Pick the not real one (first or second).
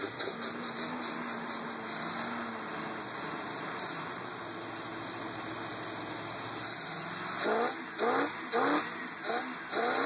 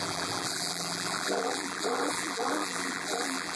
second